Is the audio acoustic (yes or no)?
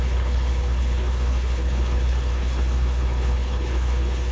no